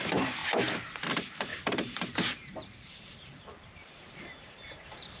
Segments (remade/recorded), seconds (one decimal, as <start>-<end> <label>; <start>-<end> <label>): 0.0-0.4 remade; 0.4-1.1 recorded; 1.1-5.2 remade